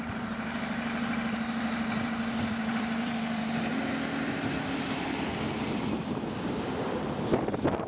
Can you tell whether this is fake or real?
fake